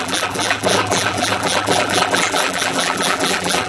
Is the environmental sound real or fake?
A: fake